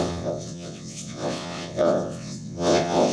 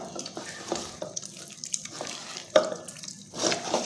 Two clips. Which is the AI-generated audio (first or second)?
first